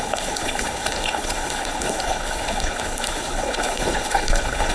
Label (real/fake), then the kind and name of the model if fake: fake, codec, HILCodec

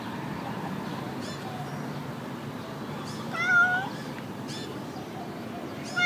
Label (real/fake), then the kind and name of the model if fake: real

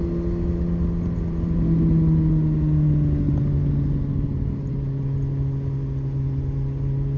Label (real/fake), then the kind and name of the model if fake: real